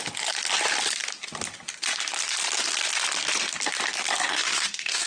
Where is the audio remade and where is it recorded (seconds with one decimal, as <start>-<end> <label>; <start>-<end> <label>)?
0.0-4.3 recorded; 4.3-5.1 remade

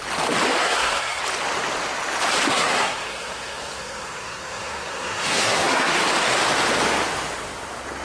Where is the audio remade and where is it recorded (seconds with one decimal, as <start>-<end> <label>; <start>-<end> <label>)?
0.0-0.6 recorded; 0.6-1.2 remade; 1.2-2.5 recorded; 2.5-6.0 remade; 6.0-8.0 recorded

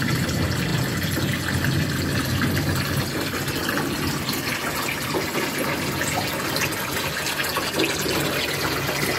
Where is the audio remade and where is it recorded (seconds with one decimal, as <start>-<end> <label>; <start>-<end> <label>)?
0.0-9.2 recorded

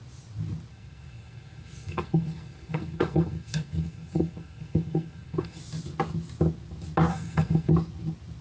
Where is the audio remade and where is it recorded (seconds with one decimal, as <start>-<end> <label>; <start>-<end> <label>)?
0.0-0.7 recorded; 0.7-5.6 remade; 5.6-7.1 recorded; 7.1-7.7 remade; 7.7-8.4 recorded

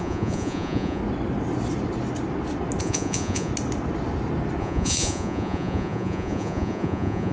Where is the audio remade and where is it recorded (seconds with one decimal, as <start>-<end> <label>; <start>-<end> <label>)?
0.0-1.0 remade; 1.0-2.8 recorded; 2.8-3.5 remade; 3.5-4.6 recorded; 4.6-7.3 remade

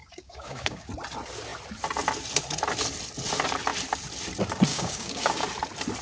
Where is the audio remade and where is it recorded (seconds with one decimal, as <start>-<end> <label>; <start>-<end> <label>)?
0.0-0.9 remade; 0.9-4.7 recorded; 4.7-5.4 remade; 5.4-6.0 recorded